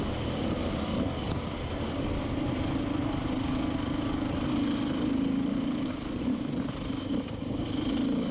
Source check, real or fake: fake